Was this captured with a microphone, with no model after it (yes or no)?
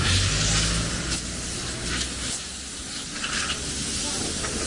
yes